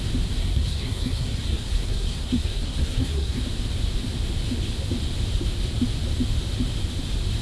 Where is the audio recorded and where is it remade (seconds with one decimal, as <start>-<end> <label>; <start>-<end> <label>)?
0.0-0.4 recorded; 0.4-3.4 remade; 3.4-7.4 recorded